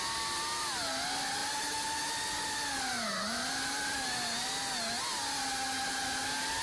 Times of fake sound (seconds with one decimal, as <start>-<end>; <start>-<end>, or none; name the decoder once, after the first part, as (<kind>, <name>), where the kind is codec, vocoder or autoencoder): none